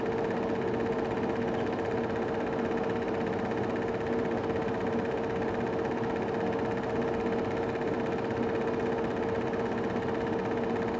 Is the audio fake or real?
real